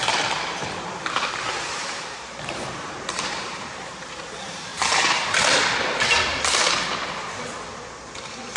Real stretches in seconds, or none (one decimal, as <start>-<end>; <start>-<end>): 4.7-8.6